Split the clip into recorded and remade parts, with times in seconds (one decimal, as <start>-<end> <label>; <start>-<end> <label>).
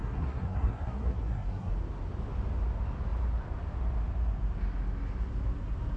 0.0-1.7 remade; 1.7-6.0 recorded